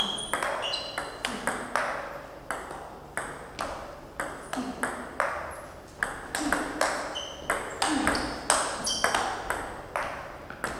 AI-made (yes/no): no